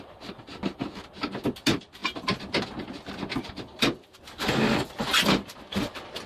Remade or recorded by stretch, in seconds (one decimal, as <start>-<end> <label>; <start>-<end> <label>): 0.0-6.3 recorded